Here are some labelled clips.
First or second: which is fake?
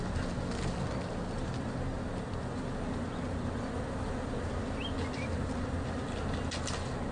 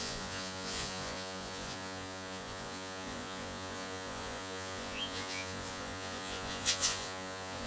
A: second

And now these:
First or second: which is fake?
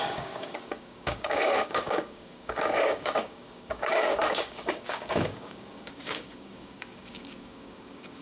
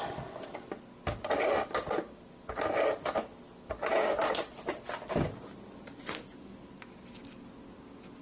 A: first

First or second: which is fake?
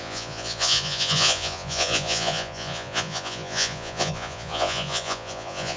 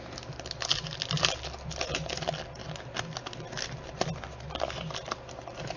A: first